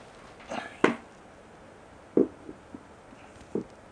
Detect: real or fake real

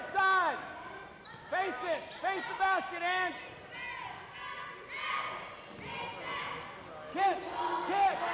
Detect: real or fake real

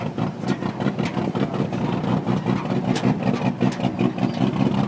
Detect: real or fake real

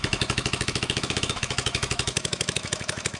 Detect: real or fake fake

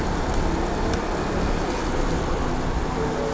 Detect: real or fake real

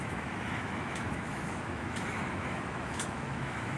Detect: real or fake fake